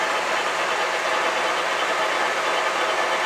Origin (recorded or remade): recorded